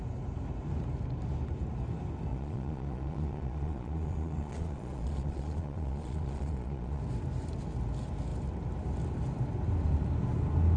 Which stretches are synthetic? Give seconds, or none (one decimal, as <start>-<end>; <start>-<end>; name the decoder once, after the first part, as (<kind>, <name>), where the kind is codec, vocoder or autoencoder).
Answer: 2.3-7.0 (vocoder, Vocos)